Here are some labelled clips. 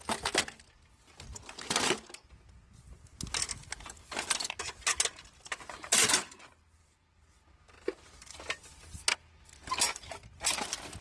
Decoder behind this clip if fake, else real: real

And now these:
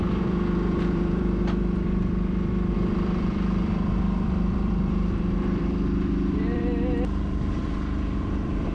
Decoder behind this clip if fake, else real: fake, vocoder, BigVGAN v2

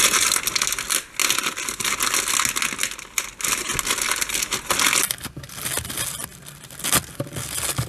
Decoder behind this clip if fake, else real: real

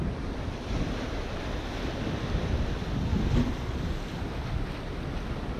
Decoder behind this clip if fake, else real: real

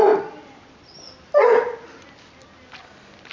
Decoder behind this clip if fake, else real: real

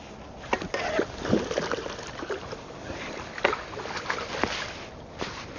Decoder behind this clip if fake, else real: real